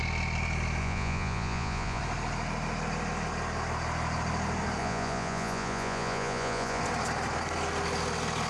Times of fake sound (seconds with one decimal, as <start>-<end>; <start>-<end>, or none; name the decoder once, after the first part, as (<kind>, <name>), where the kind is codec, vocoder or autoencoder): 0.8-2.0 (vocoder, Vocos); 4.8-6.8